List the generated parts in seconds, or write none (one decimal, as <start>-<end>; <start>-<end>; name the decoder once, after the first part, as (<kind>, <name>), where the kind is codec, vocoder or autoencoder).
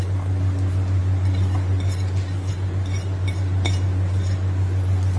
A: none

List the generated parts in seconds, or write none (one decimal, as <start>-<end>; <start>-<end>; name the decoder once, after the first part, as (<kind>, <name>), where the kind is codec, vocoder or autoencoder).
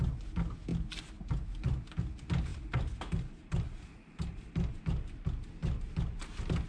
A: 2.5-4.8 (vocoder, BigVGAN v2)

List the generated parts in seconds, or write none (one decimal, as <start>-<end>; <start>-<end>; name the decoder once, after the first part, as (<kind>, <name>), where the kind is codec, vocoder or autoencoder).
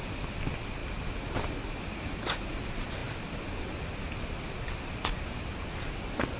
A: none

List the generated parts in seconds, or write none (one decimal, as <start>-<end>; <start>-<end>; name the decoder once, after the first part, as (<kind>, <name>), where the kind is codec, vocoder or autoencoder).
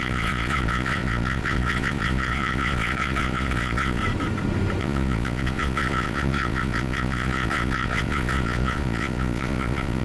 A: 0.0-4.0 (vocoder, Vocos); 4.8-10.0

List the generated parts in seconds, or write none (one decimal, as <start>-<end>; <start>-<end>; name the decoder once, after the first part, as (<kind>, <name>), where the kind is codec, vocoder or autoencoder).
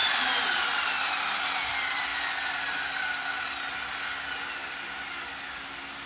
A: none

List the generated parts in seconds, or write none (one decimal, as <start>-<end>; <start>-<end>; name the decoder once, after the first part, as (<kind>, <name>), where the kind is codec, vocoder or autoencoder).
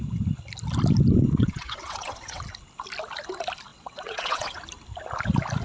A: 1.4-2.4 (vocoder, WaveNeXt); 3.7-4.6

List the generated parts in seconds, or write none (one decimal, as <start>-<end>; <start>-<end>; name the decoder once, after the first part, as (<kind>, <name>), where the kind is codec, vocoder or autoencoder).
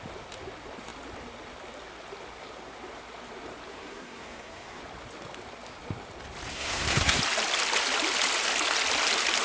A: 3.7-4.8 (codec, SNAC); 6.5-7.2